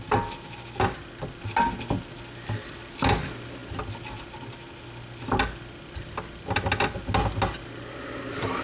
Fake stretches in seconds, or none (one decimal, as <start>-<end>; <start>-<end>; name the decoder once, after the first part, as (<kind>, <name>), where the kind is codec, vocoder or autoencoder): none